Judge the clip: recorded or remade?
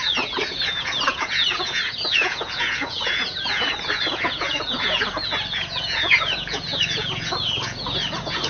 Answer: remade